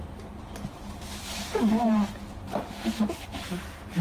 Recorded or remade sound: remade